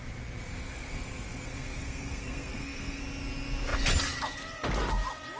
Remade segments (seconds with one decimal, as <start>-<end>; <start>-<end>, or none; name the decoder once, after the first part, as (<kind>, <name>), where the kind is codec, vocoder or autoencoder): 0.5-3.0 (codec, SNAC)